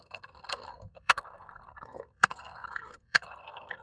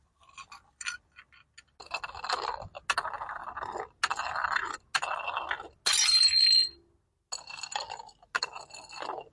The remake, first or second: first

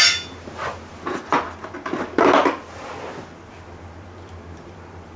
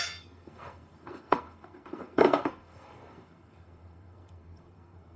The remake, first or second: second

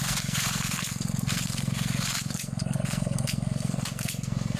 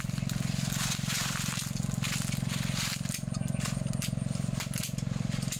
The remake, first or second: first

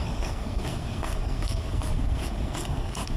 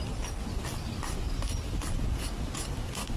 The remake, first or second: first